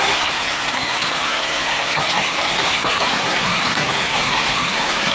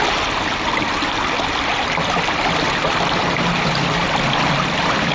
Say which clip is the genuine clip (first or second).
second